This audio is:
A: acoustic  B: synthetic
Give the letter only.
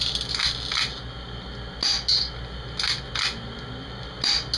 A